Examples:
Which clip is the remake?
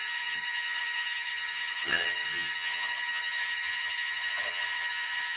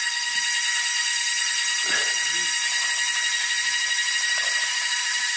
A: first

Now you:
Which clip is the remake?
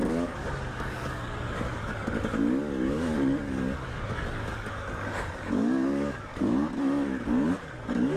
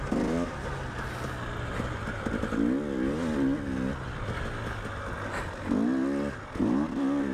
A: first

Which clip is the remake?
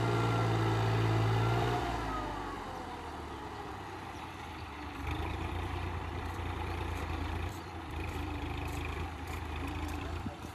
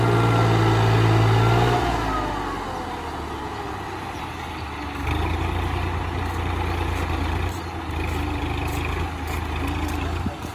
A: first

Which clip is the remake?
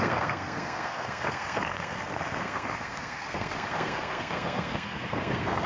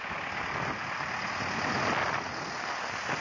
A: first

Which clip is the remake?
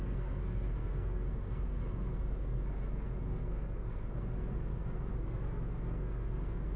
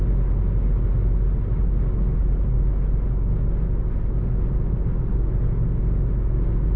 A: first